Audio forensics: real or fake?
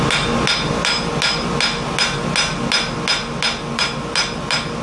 real